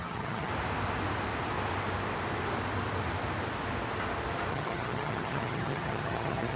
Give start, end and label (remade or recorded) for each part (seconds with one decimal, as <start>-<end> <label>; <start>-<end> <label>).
0.0-0.5 remade; 0.5-4.5 recorded; 4.5-6.6 remade

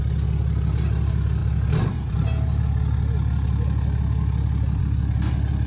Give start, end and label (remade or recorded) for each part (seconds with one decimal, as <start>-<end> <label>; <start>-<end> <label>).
0.0-5.7 recorded

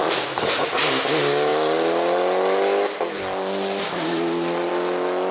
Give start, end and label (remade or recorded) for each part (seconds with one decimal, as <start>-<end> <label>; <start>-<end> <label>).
0.0-0.8 remade; 0.8-5.3 recorded

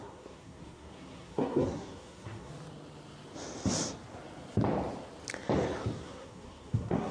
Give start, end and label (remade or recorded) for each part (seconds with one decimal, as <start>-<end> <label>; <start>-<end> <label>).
0.0-2.5 remade; 2.5-6.0 recorded; 6.0-7.1 remade

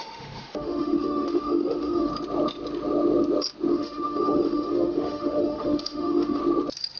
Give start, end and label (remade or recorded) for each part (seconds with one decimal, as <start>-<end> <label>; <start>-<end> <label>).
0.0-2.1 remade; 2.1-3.7 recorded; 3.7-6.4 remade; 6.4-7.0 recorded